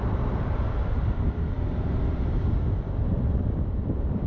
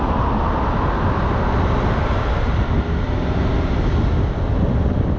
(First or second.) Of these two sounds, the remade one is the first